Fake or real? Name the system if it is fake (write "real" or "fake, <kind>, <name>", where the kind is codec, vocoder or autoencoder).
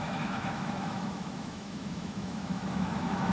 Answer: fake, autoencoder, DAC-VAE